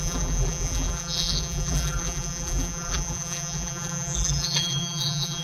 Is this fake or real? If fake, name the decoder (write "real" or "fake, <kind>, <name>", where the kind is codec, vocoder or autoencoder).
fake, vocoder, BigVGAN v2